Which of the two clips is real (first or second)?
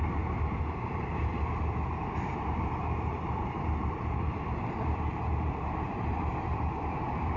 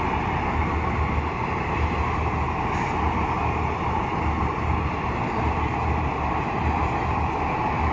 second